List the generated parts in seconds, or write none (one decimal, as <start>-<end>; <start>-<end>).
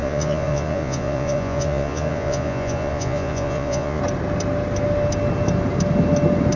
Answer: 0.0-4.0